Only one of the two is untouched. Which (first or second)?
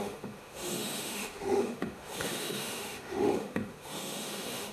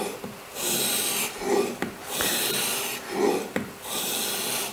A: second